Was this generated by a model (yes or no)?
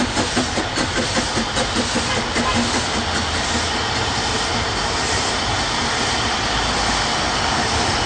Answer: no